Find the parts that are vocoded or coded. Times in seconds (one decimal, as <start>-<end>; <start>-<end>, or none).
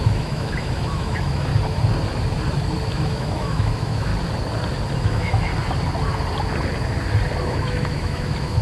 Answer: 0.0-1.5; 2.9-4.1; 5.0-5.5; 7.4-8.6